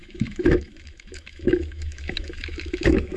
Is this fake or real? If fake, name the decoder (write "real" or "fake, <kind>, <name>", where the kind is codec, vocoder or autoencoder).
fake, autoencoder, DAC-VAE